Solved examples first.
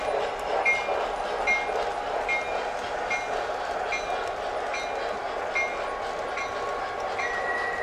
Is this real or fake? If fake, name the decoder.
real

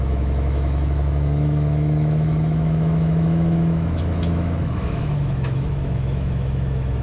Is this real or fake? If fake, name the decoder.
fake, autoencoder, DAC-VAE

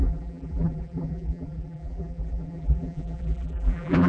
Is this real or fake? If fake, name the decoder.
fake, vocoder, BigVGAN v2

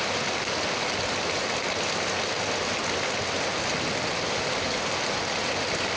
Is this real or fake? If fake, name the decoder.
real